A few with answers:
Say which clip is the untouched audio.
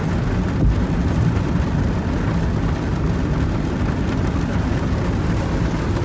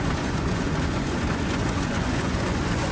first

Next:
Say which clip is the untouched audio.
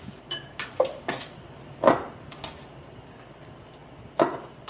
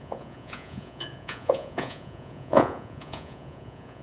first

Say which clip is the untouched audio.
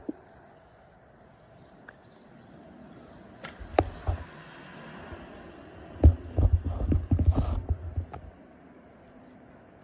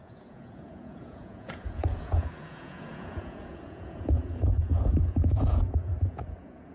first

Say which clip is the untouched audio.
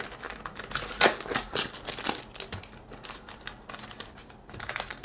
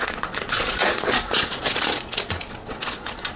first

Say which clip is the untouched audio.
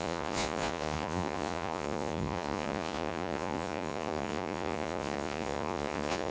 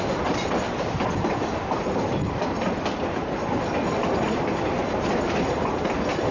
second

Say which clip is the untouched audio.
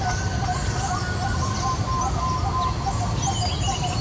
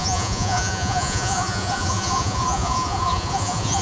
first